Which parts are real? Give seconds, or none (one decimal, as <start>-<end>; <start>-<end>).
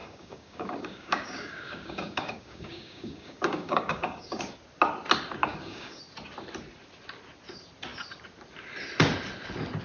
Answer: 4.4-5.4; 6.0-9.8